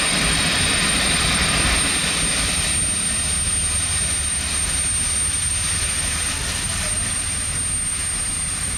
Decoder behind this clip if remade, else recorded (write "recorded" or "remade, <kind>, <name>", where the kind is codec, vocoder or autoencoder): recorded